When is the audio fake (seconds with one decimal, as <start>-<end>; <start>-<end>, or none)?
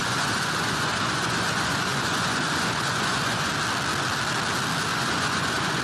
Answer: 0.0-3.5; 4.9-5.8